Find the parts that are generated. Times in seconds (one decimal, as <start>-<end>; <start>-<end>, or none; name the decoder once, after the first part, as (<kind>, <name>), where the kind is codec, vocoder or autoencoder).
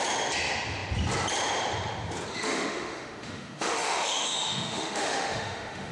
2.3-5.9 (autoencoder, DAC-VAE)